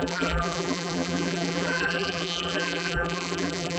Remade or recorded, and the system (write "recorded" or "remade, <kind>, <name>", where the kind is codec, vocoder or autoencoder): remade, vocoder, BigVGAN v2